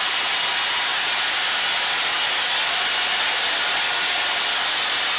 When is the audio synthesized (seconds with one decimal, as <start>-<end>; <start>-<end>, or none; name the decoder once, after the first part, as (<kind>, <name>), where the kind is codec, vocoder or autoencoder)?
none